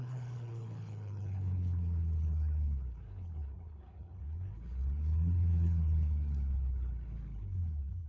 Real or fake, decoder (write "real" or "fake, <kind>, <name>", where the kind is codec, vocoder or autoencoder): fake, codec, HILCodec